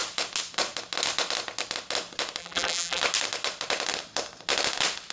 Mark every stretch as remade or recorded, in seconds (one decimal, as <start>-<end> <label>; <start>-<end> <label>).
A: 0.0-2.4 recorded; 2.4-3.0 remade; 3.0-5.1 recorded